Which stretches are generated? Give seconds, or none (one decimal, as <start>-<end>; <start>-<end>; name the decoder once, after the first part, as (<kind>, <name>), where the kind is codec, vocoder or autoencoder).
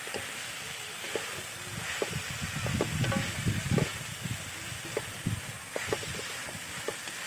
none